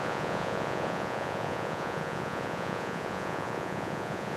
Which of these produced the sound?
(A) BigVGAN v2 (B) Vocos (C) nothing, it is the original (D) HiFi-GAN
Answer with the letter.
B